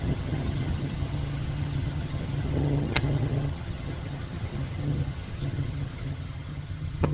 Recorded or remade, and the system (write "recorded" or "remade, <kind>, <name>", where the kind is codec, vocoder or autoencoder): remade, vocoder, HiFi-GAN